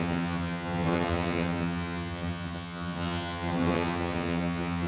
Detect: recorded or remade remade